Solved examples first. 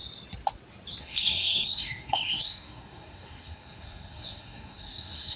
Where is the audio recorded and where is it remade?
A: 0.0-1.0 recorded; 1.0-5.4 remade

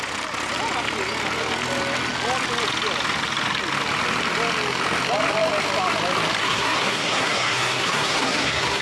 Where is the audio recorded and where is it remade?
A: 0.0-6.4 recorded; 6.4-8.8 remade

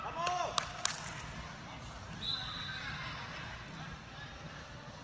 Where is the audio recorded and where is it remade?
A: 0.0-5.0 recorded

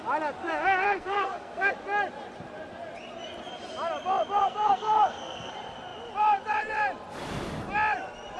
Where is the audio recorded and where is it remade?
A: 0.0-0.4 recorded; 0.4-1.7 remade; 1.7-4.4 recorded; 4.4-5.5 remade; 5.5-8.4 recorded